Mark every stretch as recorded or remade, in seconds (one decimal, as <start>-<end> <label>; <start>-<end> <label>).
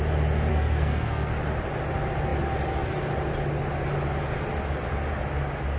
0.0-0.5 recorded; 0.5-1.3 remade; 1.3-5.8 recorded